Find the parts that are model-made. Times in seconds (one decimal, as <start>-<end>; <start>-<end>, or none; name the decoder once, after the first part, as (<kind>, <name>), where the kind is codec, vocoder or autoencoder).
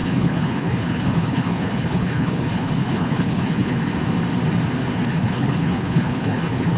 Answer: 0.0-3.9 (codec, HILCodec); 4.9-6.8